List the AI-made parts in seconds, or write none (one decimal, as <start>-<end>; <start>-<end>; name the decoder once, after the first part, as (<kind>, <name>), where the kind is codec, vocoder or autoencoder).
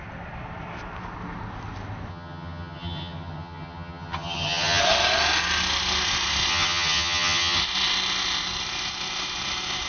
2.1-4.8 (vocoder, HiFi-GAN); 6.5-7.6